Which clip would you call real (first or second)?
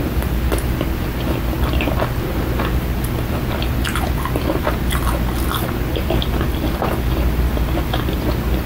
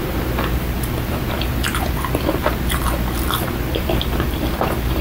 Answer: first